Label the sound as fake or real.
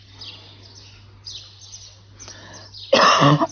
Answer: real